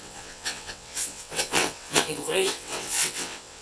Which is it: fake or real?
fake